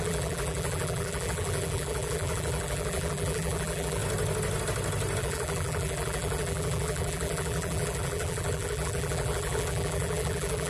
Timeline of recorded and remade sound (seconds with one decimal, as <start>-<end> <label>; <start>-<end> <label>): 0.0-4.0 remade; 4.0-5.2 recorded; 5.2-10.7 remade